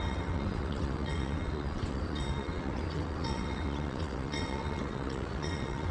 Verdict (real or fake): fake